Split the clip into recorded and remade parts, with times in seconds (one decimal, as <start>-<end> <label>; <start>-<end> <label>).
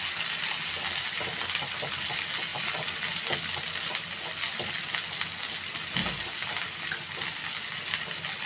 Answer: 0.0-8.5 recorded